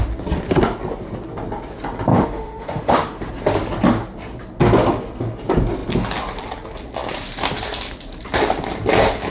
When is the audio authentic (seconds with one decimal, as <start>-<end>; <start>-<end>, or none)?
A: 0.0-2.1; 3.3-9.3